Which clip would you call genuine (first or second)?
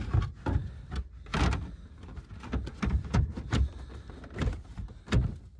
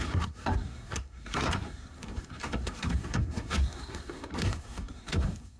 first